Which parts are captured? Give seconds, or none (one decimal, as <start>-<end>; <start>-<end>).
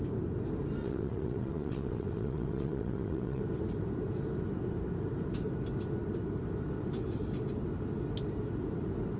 0.0-0.8; 3.4-9.2